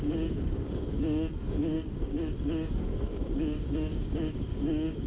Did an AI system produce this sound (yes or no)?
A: yes